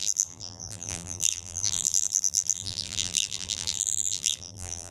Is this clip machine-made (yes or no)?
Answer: yes